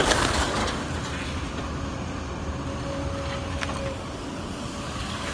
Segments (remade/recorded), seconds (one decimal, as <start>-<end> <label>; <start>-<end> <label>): 0.0-0.6 remade; 0.6-3.8 recorded; 3.8-5.3 remade